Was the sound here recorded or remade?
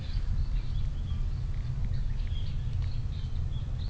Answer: recorded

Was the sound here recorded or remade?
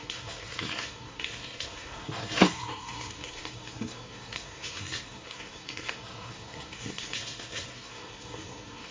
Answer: remade